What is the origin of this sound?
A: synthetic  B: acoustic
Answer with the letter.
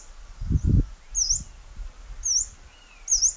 B